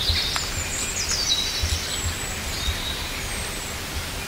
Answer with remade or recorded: recorded